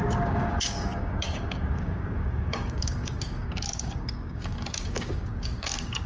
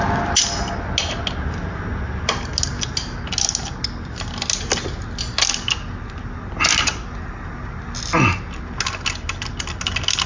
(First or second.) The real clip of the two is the second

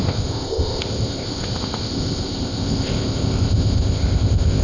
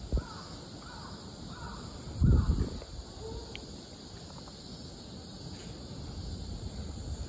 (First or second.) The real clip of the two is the second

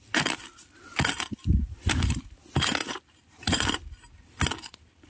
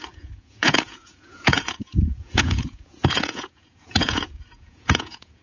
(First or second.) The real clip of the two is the first